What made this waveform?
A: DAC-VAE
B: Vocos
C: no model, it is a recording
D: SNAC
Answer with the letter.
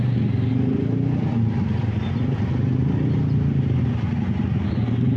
C